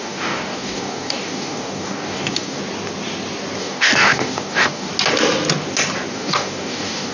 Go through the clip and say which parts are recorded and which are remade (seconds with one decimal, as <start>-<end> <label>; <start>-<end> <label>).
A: 0.0-2.6 remade; 2.6-3.6 recorded; 3.6-4.9 remade; 4.9-6.1 recorded; 6.1-7.1 remade